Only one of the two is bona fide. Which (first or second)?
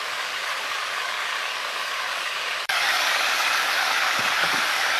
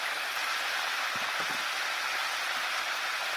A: second